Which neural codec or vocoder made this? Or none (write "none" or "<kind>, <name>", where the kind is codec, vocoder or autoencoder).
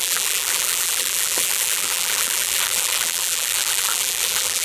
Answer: vocoder, BigVGAN v2